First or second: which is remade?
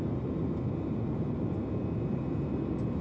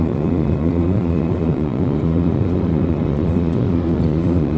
second